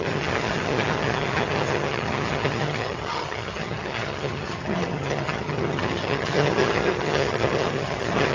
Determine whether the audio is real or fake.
fake